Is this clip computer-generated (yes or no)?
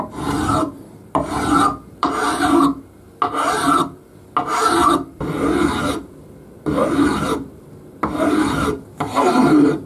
no